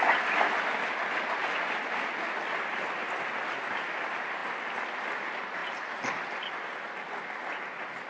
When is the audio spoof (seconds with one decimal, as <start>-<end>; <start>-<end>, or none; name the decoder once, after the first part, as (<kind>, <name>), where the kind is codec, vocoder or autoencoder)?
none

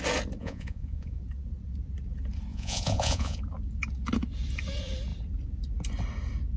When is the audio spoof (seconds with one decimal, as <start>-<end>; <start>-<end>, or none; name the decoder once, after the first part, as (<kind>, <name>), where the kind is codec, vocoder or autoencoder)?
0.4-1.2 (vocoder, Vocos); 2.5-3.4

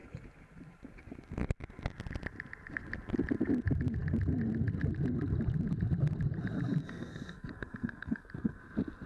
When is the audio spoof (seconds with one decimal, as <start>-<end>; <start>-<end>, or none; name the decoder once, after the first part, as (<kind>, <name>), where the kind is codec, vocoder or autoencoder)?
6.8-8.6 (codec, SNAC)

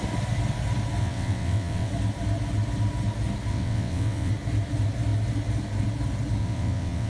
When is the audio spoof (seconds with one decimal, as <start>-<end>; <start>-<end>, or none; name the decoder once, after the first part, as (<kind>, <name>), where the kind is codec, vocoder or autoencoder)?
1.0-1.9 (vocoder, WaveNeXt); 3.5-4.3; 6.4-7.1

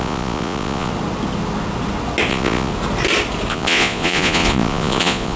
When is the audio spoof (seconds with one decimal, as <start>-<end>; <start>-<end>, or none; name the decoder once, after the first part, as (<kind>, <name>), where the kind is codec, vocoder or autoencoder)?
0.0-0.9 (vocoder, Vocos); 2.3-2.7; 3.5-5.4